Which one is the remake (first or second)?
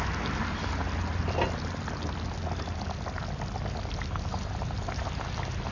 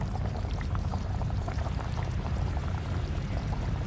second